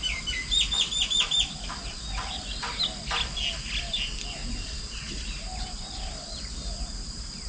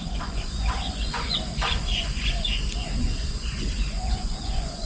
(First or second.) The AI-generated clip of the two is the second